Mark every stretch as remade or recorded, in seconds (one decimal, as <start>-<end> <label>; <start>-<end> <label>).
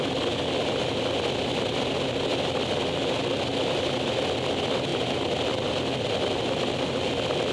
0.0-7.5 recorded